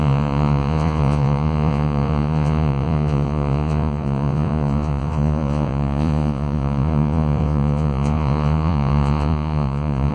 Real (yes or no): no